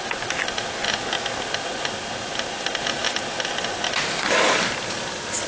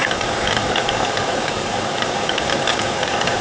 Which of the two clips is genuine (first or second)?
first